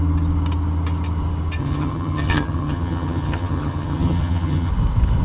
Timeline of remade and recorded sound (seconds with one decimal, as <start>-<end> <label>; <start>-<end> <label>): 0.0-1.6 recorded; 1.6-4.7 remade; 4.7-5.2 recorded

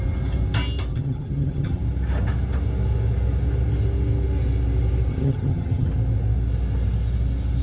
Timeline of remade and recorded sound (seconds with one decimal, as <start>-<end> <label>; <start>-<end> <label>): 0.0-0.9 recorded; 0.9-1.8 remade; 1.8-5.1 recorded; 5.1-5.9 remade; 5.9-7.6 recorded

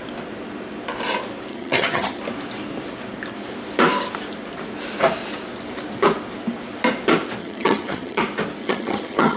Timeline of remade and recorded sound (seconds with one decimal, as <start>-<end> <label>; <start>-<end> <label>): 0.0-1.5 recorded; 1.5-2.2 remade; 2.2-7.4 recorded; 7.4-8.2 remade; 8.2-8.6 recorded; 8.6-9.4 remade